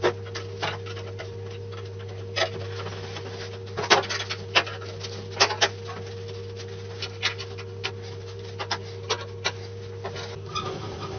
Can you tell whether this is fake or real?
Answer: real